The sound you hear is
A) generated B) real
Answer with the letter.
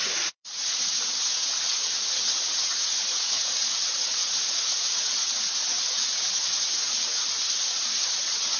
A